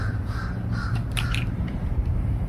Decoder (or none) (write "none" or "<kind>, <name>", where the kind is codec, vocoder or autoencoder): vocoder, BigVGAN v2